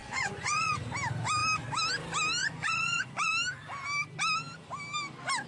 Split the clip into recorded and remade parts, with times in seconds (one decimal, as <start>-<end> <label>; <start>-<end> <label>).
0.0-0.8 remade; 0.8-2.4 recorded; 2.4-3.3 remade; 3.3-5.5 recorded

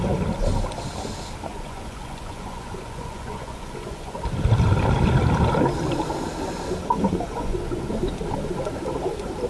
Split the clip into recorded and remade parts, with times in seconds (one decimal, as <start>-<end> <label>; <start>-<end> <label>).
0.0-1.5 recorded; 1.5-4.2 remade; 4.2-7.1 recorded; 7.1-7.9 remade; 7.9-9.5 recorded

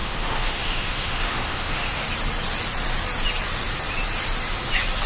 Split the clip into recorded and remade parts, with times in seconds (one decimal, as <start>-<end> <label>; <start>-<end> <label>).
0.0-2.0 remade; 2.0-5.1 recorded